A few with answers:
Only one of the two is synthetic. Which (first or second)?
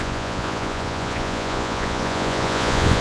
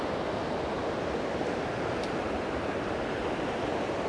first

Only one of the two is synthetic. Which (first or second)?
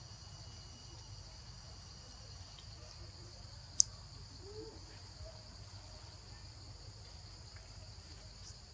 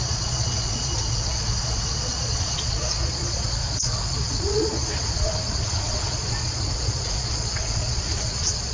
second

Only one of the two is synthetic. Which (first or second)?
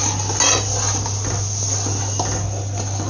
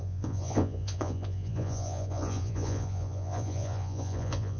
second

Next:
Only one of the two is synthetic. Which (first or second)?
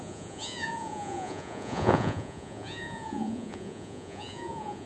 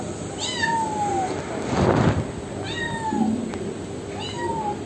first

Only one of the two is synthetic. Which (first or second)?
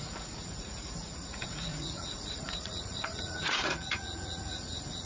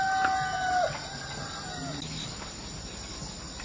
first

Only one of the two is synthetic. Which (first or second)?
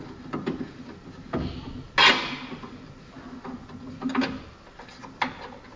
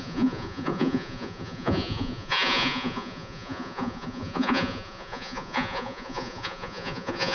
second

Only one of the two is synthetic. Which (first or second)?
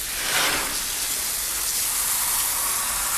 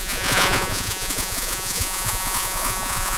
second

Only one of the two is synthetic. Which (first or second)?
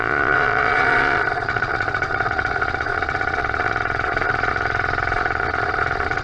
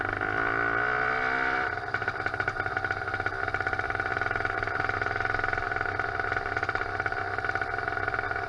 first